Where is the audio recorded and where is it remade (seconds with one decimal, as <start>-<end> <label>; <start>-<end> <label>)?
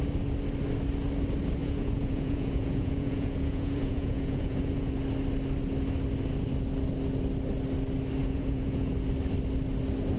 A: 0.0-1.6 recorded; 1.6-4.9 remade; 4.9-8.2 recorded; 8.2-8.9 remade; 8.9-10.2 recorded